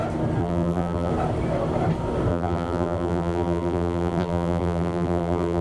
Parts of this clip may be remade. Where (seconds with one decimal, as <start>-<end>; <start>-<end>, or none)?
0.4-1.1; 2.3-5.6